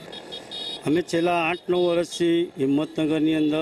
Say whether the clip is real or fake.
real